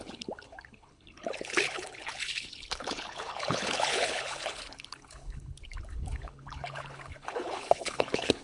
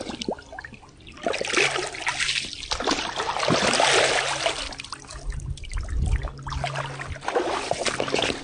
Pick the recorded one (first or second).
second